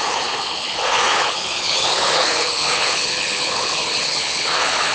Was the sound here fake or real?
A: fake